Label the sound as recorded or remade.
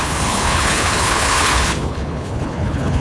remade